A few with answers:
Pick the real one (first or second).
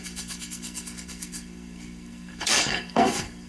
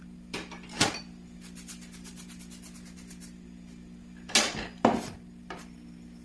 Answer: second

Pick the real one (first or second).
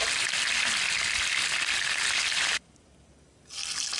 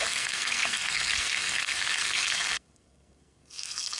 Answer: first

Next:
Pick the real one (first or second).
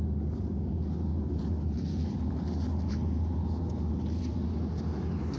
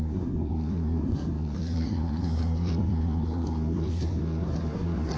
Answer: first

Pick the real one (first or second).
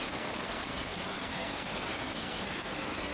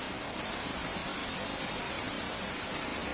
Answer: second